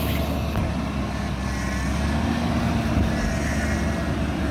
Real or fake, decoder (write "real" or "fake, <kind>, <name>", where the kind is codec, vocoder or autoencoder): real